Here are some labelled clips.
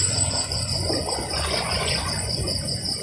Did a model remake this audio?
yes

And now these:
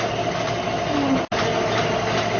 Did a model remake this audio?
no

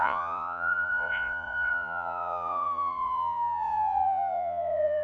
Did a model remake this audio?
yes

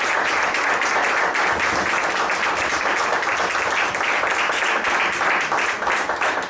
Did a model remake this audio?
no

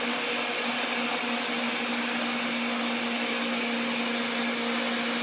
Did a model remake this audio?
no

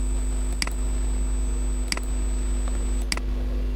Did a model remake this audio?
no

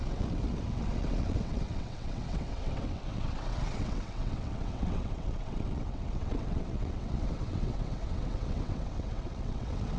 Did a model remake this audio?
yes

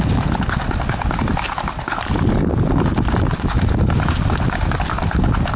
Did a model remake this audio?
no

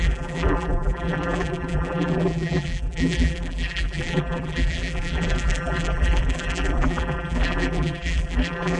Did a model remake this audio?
yes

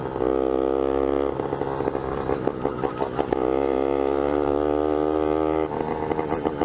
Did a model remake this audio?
no